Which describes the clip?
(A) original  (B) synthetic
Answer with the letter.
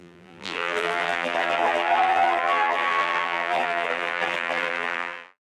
B